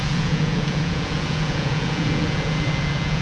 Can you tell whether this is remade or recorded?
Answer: remade